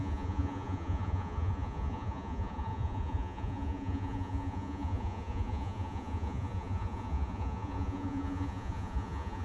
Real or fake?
fake